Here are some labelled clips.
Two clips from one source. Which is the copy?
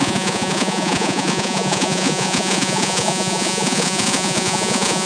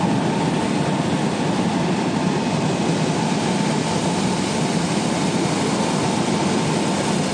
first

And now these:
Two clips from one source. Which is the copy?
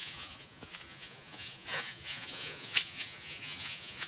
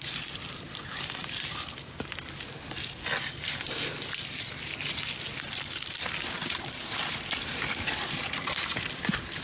first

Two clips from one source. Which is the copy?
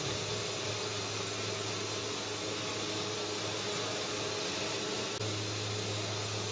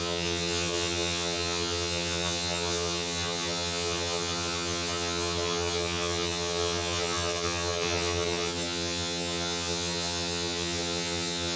second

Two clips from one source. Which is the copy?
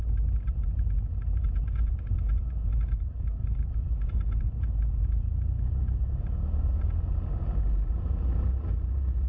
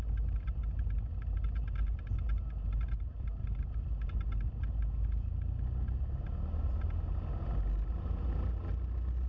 first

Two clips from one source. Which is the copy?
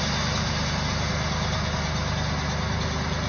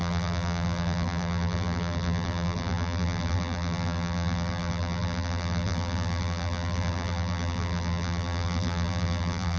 second